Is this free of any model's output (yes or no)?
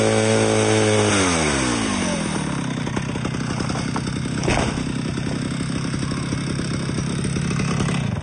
yes